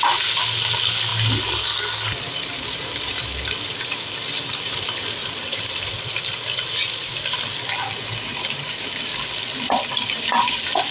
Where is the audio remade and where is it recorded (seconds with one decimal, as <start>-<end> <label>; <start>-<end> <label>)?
0.0-5.2 recorded; 5.2-5.8 remade; 5.8-8.3 recorded; 8.3-8.9 remade; 8.9-10.9 recorded

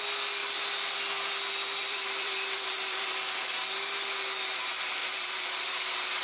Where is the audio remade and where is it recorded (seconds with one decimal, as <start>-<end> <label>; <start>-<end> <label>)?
0.0-1.8 recorded; 1.8-3.1 remade; 3.1-5.0 recorded; 5.0-5.8 remade; 5.8-6.2 recorded

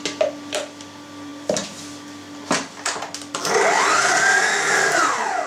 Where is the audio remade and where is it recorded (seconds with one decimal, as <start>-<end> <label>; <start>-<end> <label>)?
0.0-5.5 recorded

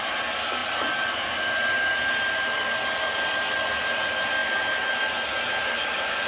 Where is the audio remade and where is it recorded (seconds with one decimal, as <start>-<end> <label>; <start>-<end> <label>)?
0.0-6.3 recorded